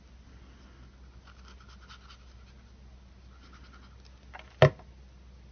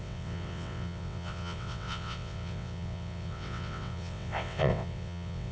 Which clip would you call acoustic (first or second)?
first